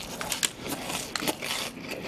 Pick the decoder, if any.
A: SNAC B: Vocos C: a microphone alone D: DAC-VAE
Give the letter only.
C